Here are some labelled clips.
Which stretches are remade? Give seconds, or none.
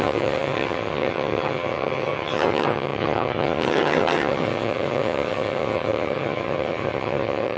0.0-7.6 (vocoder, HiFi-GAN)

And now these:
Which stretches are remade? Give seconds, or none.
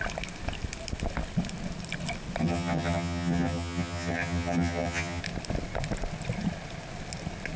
2.4-5.2 (vocoder, HiFi-GAN)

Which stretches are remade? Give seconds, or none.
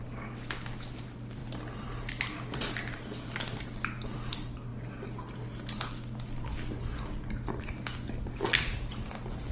none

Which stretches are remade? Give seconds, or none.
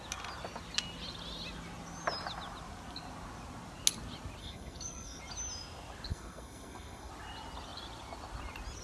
4.4-5.2 (codec, SNAC); 6.1-7.1